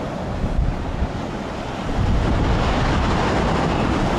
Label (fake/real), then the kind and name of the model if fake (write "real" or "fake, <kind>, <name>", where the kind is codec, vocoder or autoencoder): real